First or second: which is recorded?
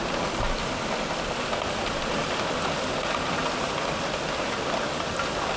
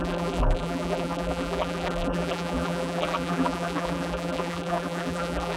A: first